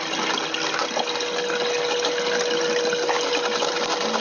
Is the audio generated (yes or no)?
no